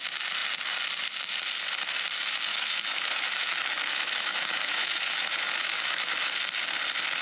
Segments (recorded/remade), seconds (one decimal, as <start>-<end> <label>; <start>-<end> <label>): 0.0-2.5 recorded; 2.5-6.1 remade; 6.1-7.2 recorded